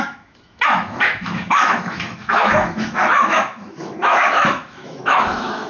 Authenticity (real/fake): fake